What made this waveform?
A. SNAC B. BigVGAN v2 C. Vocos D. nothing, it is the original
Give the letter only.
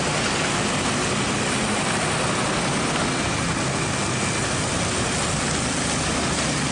D